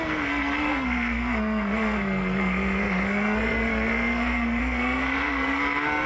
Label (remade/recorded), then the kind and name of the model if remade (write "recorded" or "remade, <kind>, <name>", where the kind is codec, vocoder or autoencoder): remade, codec, SNAC